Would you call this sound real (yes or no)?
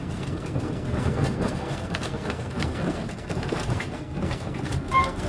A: no